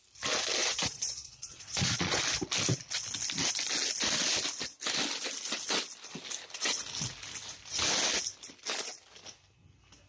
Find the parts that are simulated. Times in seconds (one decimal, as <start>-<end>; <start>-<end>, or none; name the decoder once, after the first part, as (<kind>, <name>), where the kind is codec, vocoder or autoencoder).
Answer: 0.6-2.2 (vocoder, Vocos)